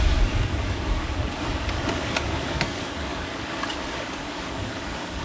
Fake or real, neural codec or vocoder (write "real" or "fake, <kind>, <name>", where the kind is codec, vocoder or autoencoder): fake, codec, DAC